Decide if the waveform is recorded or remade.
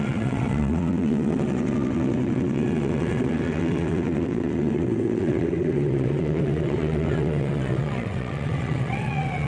remade